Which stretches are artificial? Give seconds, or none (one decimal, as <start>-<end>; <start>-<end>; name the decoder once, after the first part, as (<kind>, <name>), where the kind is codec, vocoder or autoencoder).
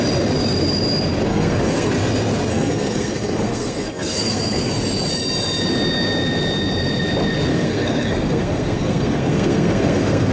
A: 1.3-1.9 (codec, SNAC); 2.5-4.7; 7.5-10.3